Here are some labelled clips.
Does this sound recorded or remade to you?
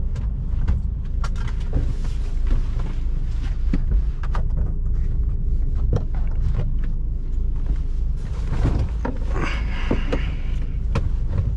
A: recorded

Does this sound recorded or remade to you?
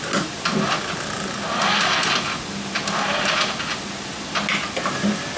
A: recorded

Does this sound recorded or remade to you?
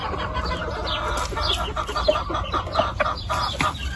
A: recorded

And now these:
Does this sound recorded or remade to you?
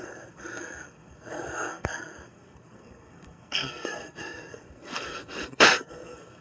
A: remade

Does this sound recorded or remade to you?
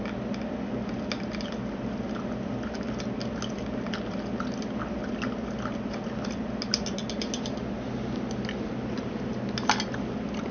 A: recorded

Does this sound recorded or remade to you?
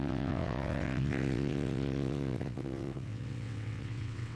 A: remade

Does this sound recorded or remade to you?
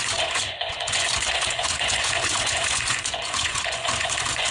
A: remade